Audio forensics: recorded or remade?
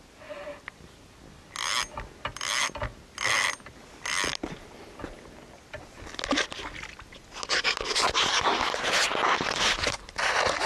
recorded